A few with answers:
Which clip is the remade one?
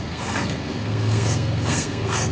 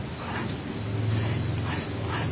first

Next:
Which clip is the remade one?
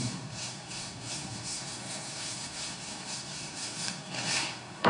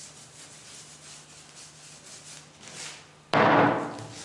first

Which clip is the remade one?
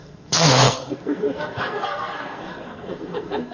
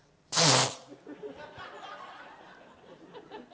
first